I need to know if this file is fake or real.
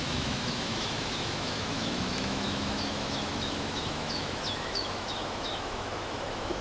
fake